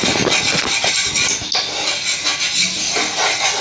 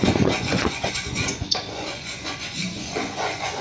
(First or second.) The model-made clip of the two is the second